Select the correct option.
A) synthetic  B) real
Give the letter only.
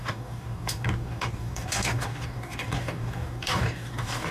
A